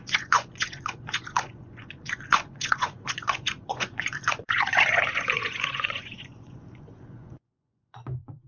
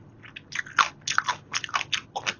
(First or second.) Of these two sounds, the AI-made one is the first